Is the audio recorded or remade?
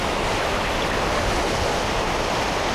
recorded